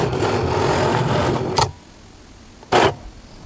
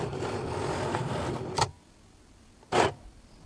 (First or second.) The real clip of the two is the first